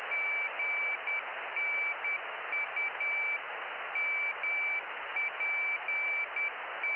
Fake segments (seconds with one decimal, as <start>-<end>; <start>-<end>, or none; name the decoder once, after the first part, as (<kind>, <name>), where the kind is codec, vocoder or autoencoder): none